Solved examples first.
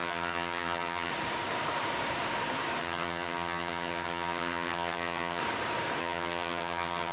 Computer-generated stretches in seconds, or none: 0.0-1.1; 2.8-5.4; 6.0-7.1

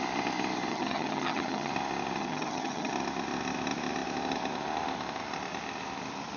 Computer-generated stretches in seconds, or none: 0.7-1.7; 2.2-2.9

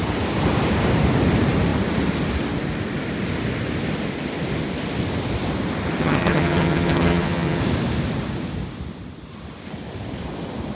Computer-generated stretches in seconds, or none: 6.0-7.6

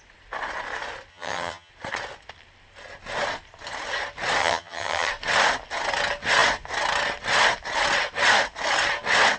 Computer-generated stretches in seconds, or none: 1.1-1.7; 4.4-5.1

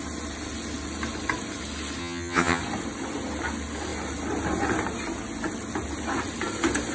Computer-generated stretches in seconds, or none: 2.0-2.6

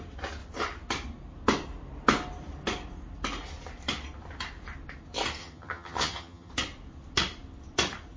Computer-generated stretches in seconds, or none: 5.4-6.5

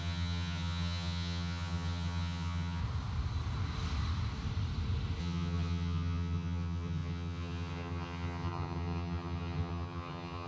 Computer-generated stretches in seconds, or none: 0.0-2.8; 5.2-10.5

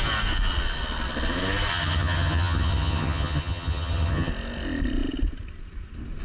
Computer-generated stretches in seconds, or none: 1.7-4.3